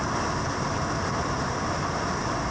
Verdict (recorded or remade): recorded